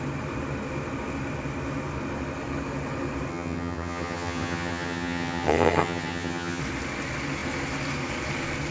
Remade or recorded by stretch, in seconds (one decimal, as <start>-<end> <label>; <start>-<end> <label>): 0.0-3.3 recorded; 3.3-6.6 remade; 6.6-8.7 recorded